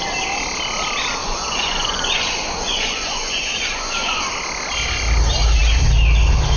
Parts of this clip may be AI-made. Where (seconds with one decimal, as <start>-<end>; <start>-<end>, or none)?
1.2-4.2